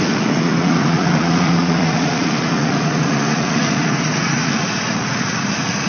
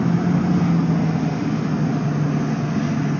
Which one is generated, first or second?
first